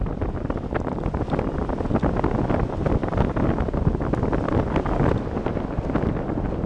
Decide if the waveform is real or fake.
real